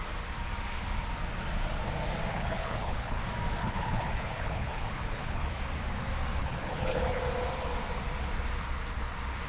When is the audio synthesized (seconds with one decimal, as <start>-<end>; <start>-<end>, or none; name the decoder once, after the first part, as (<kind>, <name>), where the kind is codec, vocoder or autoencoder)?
2.3-3.2 (codec, HILCodec); 3.6-5.6; 6.4-7.2

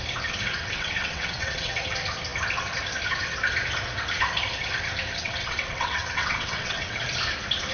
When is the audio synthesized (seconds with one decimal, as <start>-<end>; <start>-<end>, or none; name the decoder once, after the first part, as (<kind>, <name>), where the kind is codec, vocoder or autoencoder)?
0.6-1.9 (vocoder, WaveNeXt); 5.2-7.0

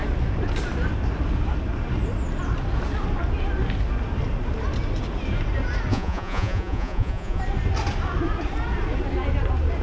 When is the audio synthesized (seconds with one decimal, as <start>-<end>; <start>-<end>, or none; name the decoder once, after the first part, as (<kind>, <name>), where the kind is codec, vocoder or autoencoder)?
5.9-7.4 (vocoder, Vocos)

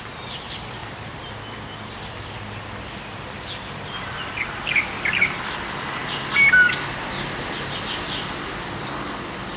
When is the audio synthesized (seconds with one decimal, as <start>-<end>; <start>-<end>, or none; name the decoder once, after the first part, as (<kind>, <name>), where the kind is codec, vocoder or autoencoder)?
none

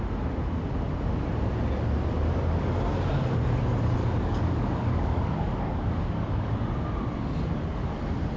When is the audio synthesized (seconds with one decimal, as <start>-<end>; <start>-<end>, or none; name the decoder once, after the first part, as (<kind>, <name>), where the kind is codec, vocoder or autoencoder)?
4.0-6.5 (codec, DAC)